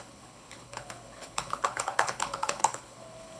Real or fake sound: fake